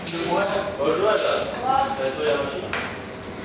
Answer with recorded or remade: recorded